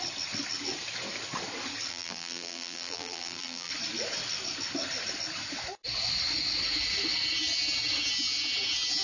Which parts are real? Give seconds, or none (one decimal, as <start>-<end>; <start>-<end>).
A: 0.0-1.9; 3.7-9.0